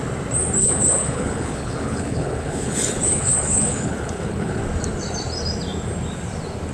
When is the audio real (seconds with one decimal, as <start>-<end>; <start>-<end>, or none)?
0.0-0.6; 4.6-6.7